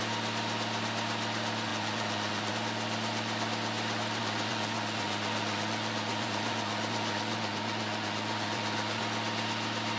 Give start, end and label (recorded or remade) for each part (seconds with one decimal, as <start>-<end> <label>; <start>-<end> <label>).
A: 0.0-1.7 recorded; 1.7-2.5 remade; 2.5-4.2 recorded; 4.2-9.0 remade; 9.0-10.0 recorded